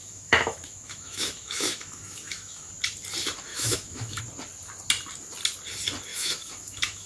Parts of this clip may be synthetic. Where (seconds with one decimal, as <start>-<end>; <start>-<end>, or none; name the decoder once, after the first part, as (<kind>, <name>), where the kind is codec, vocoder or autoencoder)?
0.0-2.7 (autoencoder, DAC-VAE); 3.5-4.2; 6.1-7.1